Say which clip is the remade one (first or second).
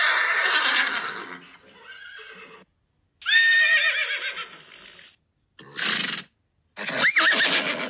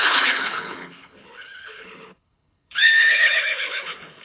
second